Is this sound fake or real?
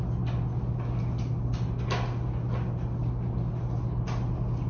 real